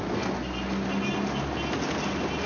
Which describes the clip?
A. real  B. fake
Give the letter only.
A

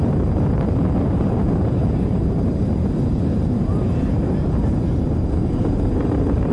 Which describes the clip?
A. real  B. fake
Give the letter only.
B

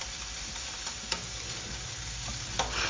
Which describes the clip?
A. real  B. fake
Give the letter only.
A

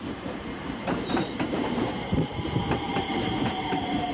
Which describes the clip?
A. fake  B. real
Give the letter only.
A